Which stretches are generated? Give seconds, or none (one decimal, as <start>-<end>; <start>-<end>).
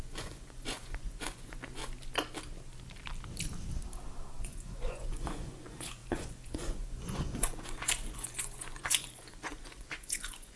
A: 0.0-1.8; 4.4-10.6